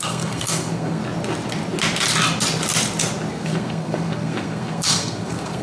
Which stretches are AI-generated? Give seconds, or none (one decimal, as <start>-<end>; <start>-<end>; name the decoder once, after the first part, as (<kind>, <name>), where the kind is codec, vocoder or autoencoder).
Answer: 0.0-1.0 (codec, SNAC); 3.3-5.6